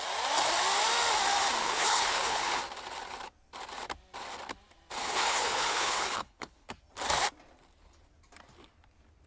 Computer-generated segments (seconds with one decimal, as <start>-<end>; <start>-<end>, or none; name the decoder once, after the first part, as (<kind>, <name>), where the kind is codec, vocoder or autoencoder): 1.6-2.6 (codec, HILCodec); 5.0-6.7